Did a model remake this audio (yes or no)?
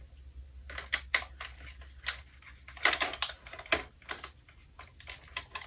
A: no